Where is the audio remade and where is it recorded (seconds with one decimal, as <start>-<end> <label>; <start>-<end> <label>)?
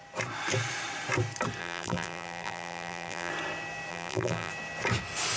0.0-1.6 recorded; 1.6-3.3 remade; 3.3-3.9 recorded; 3.9-4.5 remade; 4.5-5.4 recorded